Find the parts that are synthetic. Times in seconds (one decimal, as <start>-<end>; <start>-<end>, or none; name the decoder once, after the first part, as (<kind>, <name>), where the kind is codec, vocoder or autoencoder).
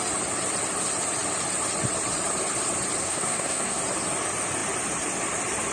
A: 3.0-3.8 (codec, SNAC)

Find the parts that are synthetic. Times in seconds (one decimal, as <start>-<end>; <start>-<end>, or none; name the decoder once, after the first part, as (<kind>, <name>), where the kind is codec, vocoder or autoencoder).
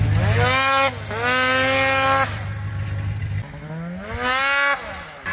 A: none